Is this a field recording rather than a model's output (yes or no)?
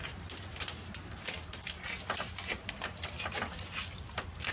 yes